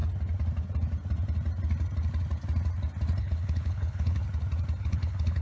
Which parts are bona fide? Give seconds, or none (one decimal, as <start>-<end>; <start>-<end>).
0.0-3.2; 4.2-4.8